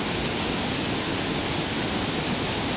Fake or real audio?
real